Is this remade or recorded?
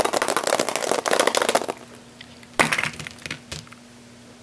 recorded